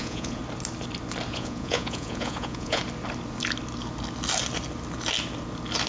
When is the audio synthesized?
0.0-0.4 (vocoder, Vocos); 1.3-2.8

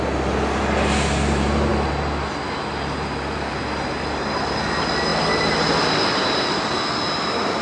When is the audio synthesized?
none

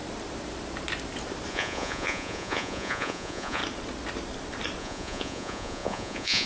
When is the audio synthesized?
1.5-3.6 (vocoder, Vocos); 4.8-6.5

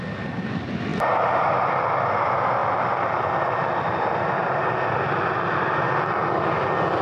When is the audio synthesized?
0.9-1.7 (vocoder, BigVGAN v2)

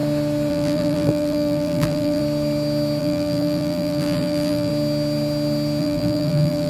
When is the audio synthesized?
0.5-2.2 (vocoder, BigVGAN v2); 3.0-4.7; 5.8-6.7

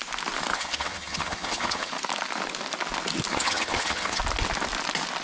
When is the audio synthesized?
0.5-1.9 (vocoder, HiFi-GAN); 3.3-4.2